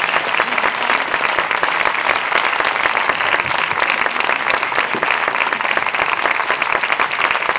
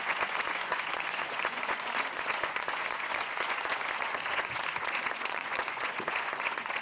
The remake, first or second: second